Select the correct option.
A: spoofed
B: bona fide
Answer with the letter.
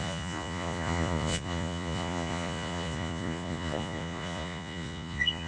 A